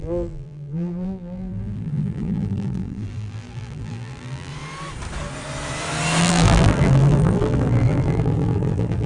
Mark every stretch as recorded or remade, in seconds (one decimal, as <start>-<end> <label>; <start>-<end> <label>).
0.0-4.5 remade; 4.5-6.2 recorded; 6.2-9.1 remade